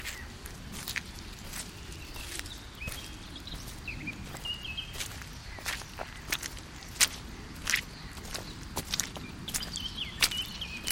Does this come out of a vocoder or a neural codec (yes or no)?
no